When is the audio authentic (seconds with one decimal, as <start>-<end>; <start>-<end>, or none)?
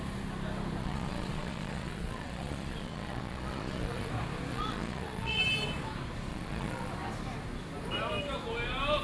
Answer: 0.0-0.8; 4.1-4.5; 5.4-6.3; 6.9-9.0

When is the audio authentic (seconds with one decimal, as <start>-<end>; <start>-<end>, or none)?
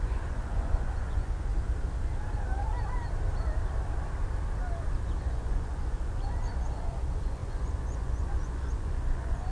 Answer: 1.5-5.2